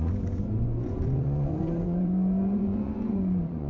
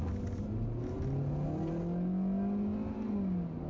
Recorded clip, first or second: second